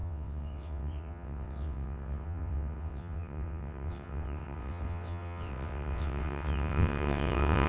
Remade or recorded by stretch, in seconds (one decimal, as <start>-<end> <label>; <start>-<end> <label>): 0.0-7.7 remade